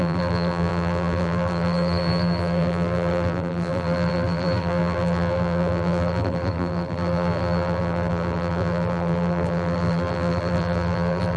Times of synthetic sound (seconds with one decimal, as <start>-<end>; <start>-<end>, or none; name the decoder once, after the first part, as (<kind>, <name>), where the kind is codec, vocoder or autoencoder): 0.0-11.4 (vocoder, BigVGAN v2)